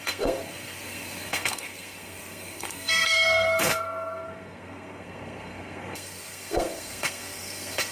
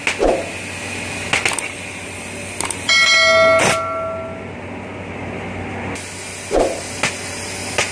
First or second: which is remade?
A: first